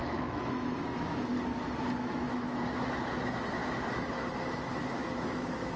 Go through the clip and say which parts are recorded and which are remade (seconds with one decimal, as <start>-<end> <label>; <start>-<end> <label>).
0.0-1.3 remade; 1.3-2.0 recorded; 2.0-5.8 remade